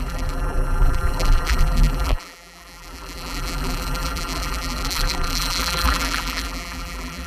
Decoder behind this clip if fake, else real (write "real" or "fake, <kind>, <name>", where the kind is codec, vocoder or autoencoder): fake, vocoder, BigVGAN v2